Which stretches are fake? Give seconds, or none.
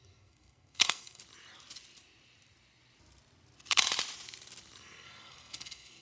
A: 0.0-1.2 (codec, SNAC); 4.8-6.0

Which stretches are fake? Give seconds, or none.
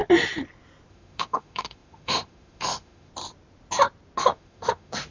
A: 0.9-3.1 (autoencoder, DAC-VAE); 4.2-5.1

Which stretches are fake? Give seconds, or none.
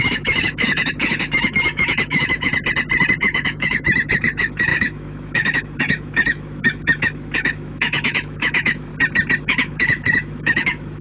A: 0.0-2.5 (autoencoder, DAC-VAE); 3.2-8.9; 9.4-11.0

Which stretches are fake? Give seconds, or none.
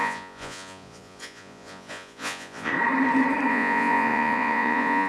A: 0.0-2.7 (vocoder, Vocos); 3.5-5.1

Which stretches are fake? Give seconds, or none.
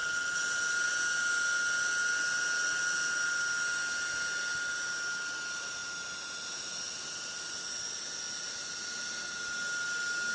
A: none